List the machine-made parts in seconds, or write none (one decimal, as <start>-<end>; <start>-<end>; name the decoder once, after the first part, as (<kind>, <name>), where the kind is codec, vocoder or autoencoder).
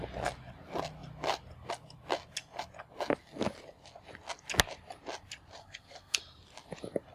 5.6-6.2 (codec, SNAC)